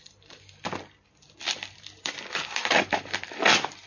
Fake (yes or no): yes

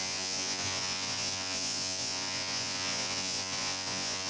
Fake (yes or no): yes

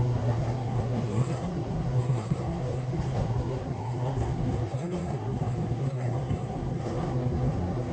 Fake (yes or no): yes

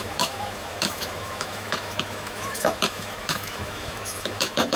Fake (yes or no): yes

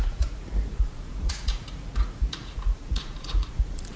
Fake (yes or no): yes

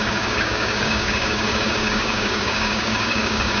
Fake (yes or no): yes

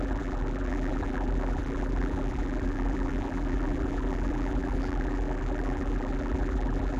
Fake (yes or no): yes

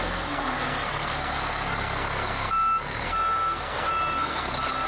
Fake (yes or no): yes